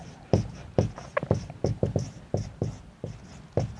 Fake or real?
fake